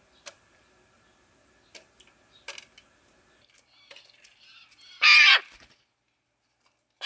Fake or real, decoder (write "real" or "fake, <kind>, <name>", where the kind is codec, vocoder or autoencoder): real